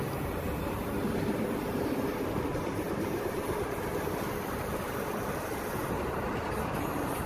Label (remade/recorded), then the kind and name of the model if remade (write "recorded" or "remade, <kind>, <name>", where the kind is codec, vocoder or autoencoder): recorded